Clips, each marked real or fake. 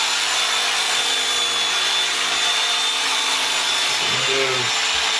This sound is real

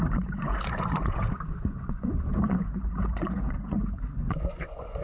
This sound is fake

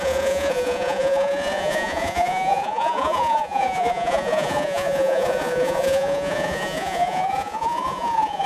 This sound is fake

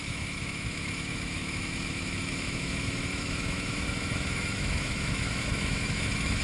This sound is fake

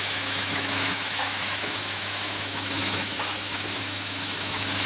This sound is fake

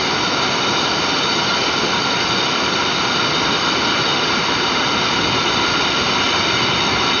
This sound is real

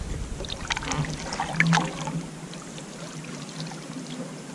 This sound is real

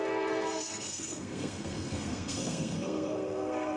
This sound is fake